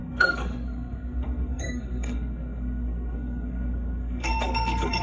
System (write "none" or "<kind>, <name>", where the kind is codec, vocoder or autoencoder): codec, SNAC